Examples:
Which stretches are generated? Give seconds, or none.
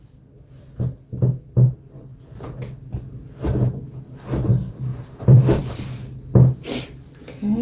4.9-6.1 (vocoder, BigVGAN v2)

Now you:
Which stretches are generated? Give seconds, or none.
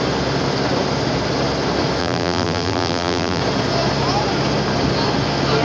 2.0-3.4 (vocoder, BigVGAN v2)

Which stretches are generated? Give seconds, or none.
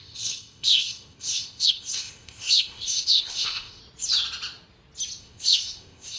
0.0-3.8 (codec, ZipCodec); 5.2-6.2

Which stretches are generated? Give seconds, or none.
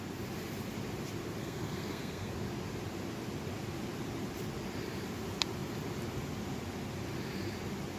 1.4-2.3 (codec, SNAC)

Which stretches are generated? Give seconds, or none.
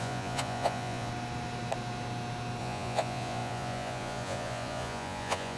0.0-1.1 (vocoder, Vocos); 2.6-5.6